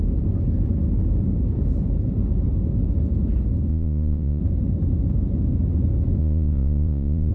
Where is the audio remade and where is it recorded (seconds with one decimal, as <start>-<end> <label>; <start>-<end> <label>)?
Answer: 0.0-3.7 recorded; 3.7-4.4 remade; 4.4-6.2 recorded; 6.2-7.3 remade